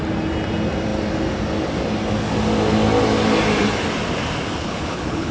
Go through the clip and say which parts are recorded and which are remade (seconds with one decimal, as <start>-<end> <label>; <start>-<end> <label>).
0.0-4.6 recorded; 4.6-5.3 remade